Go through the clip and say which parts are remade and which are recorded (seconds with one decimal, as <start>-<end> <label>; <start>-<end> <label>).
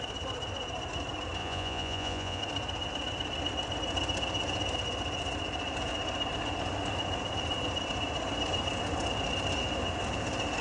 0.0-1.4 recorded; 1.4-2.4 remade; 2.4-10.6 recorded